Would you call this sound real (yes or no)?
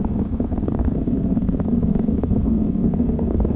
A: no